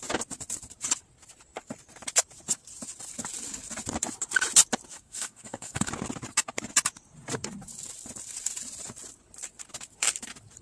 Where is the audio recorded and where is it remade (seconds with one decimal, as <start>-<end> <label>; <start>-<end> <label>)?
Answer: 0.0-4.9 recorded; 4.9-5.9 remade; 5.9-10.6 recorded